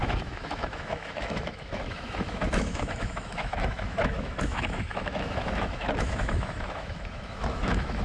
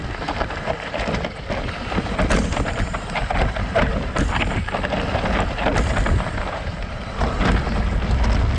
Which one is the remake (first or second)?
first